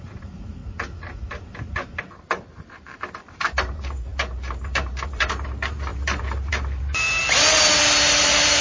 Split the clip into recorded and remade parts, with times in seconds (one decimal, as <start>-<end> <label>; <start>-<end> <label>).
0.0-0.6 remade; 0.6-1.3 recorded; 1.3-7.2 remade; 7.2-8.2 recorded; 8.2-8.6 remade